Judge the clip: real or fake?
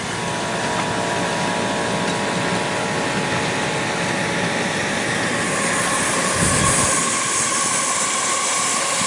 real